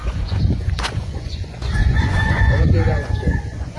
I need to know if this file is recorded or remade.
remade